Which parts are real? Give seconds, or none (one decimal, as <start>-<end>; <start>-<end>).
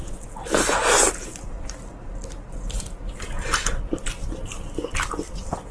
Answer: 0.0-5.7